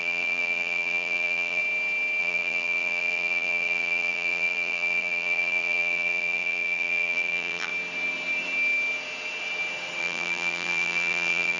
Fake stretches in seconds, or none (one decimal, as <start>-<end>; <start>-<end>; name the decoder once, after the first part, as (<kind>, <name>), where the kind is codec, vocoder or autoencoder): 0.0-1.6 (vocoder, BigVGAN v2); 2.2-7.7; 10.0-11.6